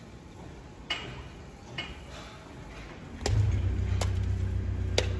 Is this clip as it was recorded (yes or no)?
yes